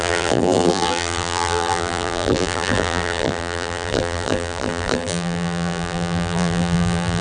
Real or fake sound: fake